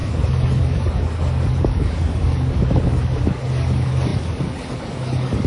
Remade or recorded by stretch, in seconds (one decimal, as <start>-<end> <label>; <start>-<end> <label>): 0.0-5.5 remade